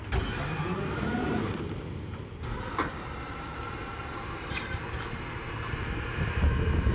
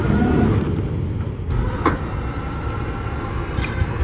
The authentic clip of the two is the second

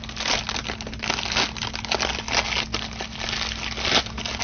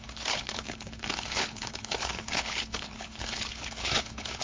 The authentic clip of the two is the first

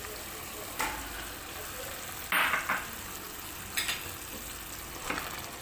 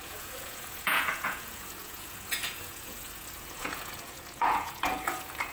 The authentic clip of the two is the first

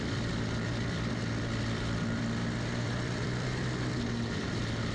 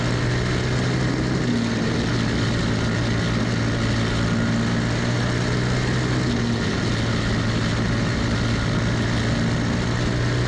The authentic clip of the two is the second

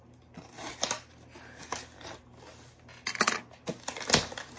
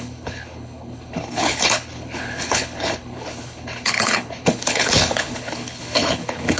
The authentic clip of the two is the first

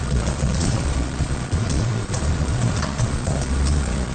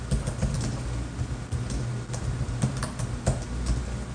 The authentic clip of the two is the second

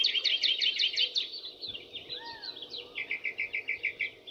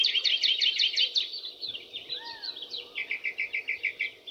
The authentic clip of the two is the first